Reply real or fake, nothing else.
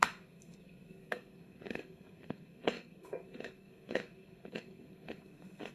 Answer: fake